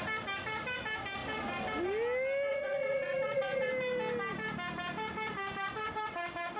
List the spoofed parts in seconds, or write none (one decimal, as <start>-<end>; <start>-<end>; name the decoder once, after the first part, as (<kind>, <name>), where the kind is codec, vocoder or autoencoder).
2.5-3.7 (vocoder, Vocos)

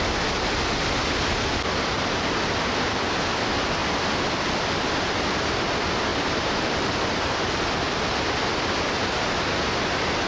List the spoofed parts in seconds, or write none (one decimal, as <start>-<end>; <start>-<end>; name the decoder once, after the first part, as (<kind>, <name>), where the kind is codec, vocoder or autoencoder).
3.8-5.3 (vocoder, BigVGAN v2); 6.1-7.3

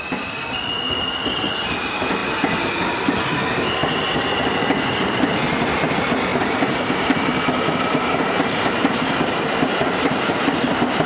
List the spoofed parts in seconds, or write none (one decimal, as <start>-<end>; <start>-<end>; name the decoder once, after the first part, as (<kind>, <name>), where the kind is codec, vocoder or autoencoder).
6.3-9.4 (vocoder, BigVGAN v2)

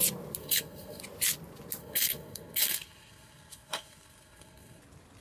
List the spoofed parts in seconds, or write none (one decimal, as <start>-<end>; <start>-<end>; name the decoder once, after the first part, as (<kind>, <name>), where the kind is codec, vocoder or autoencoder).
0.4-1.0 (codec, SNAC); 1.8-4.8

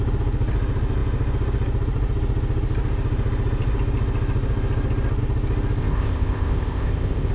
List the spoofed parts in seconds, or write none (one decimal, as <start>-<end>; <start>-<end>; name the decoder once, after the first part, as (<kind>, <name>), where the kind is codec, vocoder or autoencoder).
5.8-7.3 (codec, ZipCodec)

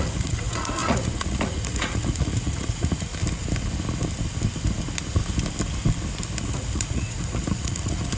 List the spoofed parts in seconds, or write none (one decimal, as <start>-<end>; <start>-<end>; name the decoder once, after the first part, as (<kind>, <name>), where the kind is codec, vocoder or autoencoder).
0.0-3.1 (vocoder, Vocos); 6.4-8.2